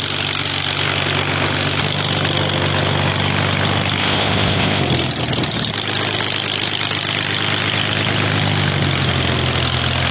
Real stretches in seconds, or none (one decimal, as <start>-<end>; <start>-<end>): 0.0-4.0; 4.8-10.1